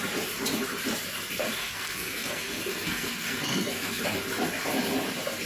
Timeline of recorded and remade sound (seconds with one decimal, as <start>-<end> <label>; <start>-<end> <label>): 0.0-1.6 recorded; 1.6-4.0 remade; 4.0-5.5 recorded